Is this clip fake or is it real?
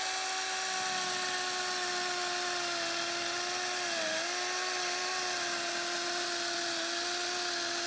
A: real